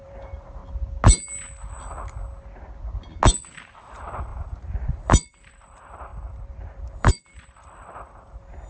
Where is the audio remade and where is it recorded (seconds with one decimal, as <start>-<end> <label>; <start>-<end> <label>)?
0.0-0.6 remade; 0.6-3.3 recorded; 3.3-8.7 remade